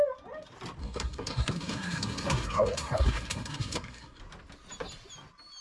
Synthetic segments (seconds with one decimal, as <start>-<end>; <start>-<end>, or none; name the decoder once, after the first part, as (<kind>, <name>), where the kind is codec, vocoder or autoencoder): 0.8-4.2 (codec, SNAC)